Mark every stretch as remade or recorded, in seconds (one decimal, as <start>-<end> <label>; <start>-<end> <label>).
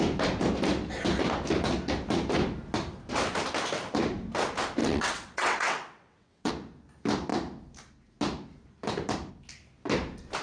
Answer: 0.0-4.8 recorded; 4.8-6.5 remade; 6.5-10.4 recorded